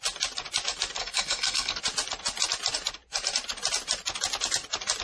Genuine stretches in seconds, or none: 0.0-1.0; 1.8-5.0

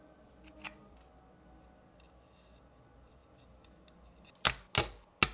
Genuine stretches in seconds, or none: 0.0-5.3

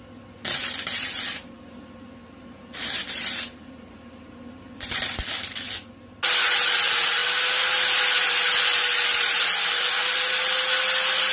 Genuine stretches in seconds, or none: 0.0-11.3

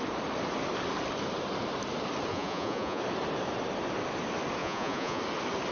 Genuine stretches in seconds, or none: 0.0-2.3; 3.0-4.6; 5.2-5.7

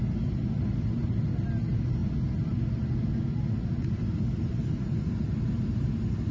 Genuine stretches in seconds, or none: 0.0-6.3